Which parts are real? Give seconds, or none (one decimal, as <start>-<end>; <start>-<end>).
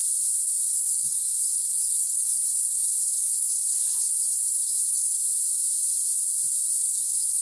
0.0-0.7; 5.2-6.8